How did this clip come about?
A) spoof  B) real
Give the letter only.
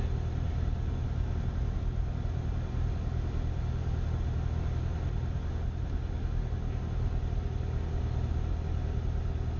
B